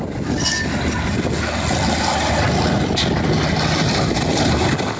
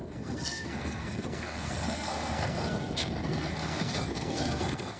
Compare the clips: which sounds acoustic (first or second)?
first